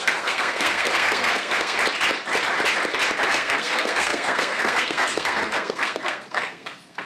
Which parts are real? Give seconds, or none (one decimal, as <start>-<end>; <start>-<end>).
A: 1.8-3.3